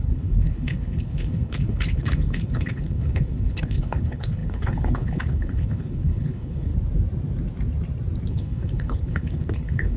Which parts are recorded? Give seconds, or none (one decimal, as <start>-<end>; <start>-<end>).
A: 6.7-8.3